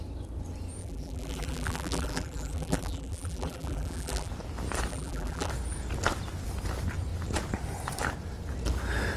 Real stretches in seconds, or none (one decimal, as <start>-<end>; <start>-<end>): 0.0-0.8; 4.3-4.9; 5.5-9.2